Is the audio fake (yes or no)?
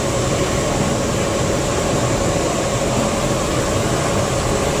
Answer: no